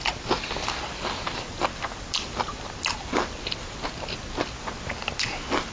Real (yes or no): yes